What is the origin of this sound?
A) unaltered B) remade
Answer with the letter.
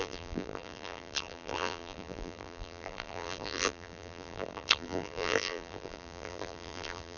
B